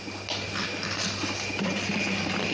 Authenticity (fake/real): real